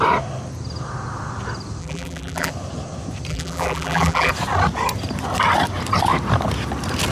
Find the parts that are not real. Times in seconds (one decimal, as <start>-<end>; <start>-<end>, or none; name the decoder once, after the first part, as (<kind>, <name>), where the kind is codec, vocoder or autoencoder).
1.8-2.5 (vocoder, BigVGAN v2); 3.3-4.3